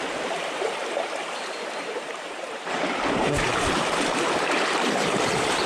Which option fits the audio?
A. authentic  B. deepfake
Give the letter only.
B